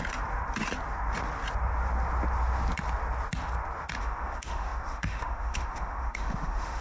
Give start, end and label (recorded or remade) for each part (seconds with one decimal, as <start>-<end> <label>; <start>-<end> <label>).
0.0-4.0 recorded; 4.0-6.8 remade